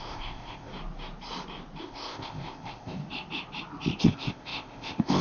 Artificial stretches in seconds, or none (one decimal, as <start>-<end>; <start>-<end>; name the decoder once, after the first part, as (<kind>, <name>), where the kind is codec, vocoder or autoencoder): 0.0-0.7 (codec, ZipCodec); 1.8-3.0; 4.0-5.2

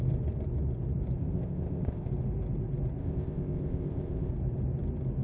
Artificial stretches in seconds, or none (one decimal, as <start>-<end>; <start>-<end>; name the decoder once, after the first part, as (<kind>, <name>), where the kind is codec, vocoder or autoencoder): 1.2-2.1 (codec, ZipCodec); 3.0-4.3

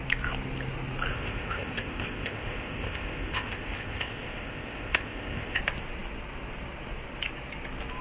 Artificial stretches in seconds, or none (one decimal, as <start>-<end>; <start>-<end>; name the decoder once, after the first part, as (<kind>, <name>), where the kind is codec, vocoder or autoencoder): 1.1-5.6 (codec, ZipCodec)

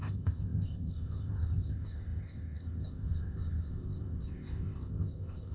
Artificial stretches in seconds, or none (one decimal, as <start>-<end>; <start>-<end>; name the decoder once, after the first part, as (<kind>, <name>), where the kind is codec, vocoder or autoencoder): 0.0-5.5 (codec, ZipCodec)

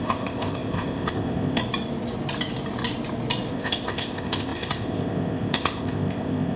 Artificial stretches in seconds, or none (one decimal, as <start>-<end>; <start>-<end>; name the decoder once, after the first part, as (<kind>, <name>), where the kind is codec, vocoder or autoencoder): 0.0-1.6 (codec, ZipCodec); 3.5-6.6

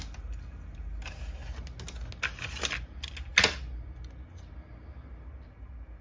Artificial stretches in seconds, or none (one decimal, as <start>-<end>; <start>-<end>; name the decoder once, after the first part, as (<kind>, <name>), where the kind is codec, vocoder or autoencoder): none

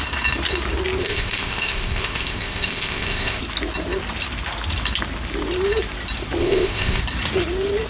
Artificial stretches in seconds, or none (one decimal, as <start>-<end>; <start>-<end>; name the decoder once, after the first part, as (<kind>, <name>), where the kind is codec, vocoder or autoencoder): 1.0-3.4 (codec, ZipCodec); 6.4-7.0

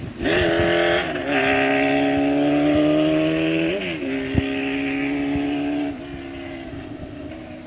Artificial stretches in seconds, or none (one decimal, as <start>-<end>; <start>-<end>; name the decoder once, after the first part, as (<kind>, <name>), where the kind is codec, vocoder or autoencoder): 6.7-7.3 (codec, ZipCodec)